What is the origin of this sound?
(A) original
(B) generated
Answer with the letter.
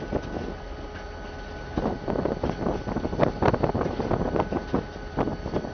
A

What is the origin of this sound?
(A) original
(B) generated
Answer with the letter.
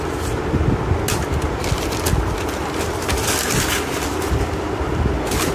A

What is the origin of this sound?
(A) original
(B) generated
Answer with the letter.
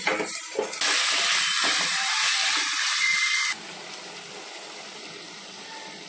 B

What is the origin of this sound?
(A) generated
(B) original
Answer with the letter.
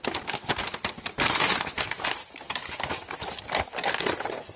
B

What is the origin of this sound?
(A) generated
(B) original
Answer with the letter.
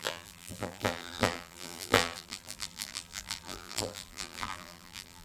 A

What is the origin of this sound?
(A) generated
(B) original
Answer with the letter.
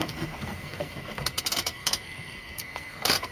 A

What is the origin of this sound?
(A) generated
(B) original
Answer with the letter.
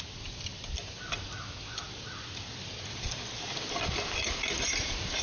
B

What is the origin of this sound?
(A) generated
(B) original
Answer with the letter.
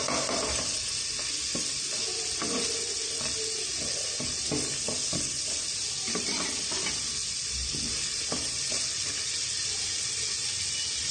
B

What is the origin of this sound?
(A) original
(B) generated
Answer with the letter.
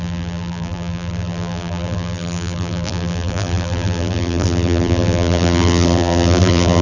B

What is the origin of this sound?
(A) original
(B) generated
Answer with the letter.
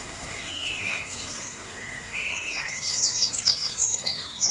B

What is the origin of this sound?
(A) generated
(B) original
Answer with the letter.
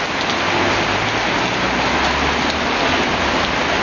B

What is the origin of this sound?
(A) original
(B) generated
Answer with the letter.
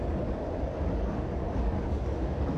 B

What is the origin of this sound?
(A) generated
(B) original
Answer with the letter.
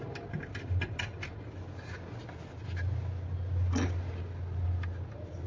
B